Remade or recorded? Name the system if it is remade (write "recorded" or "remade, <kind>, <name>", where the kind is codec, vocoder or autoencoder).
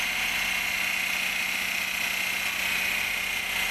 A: recorded